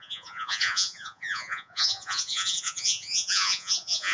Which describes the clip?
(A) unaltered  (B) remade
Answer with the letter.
B